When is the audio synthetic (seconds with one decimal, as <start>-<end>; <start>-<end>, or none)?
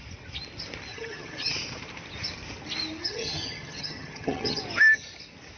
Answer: 0.9-1.5; 3.0-4.6